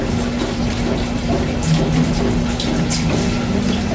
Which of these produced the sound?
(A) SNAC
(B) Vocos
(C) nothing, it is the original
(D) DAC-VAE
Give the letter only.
C